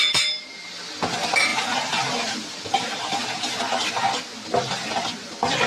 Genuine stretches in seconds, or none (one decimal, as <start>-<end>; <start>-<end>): 0.0-1.5; 3.9-5.7